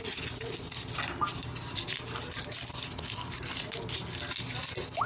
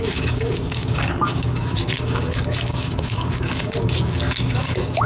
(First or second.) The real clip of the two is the first